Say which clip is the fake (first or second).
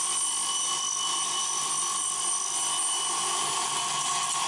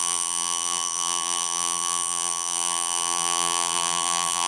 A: second